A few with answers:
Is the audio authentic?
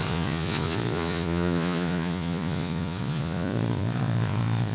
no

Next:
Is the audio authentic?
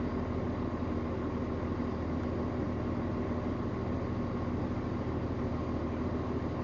yes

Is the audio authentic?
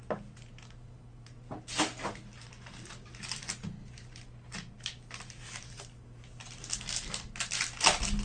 yes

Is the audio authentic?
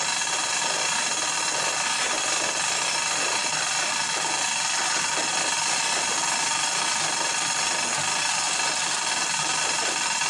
yes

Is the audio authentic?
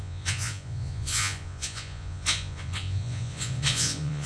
no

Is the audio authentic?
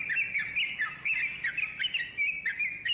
yes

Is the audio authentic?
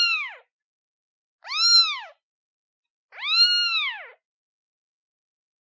yes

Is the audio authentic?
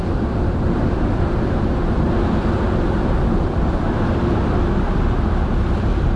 no